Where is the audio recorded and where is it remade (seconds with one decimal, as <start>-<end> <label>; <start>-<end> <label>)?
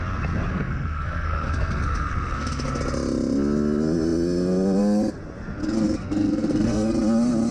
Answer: 0.0-0.5 recorded; 0.5-2.8 remade; 2.8-5.6 recorded; 5.6-6.9 remade; 6.9-7.5 recorded